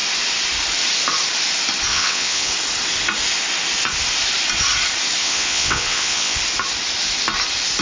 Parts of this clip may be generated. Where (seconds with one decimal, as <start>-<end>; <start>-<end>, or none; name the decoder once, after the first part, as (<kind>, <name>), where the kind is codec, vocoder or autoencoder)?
1.9-2.5 (vocoder, WaveNeXt); 5.2-6.4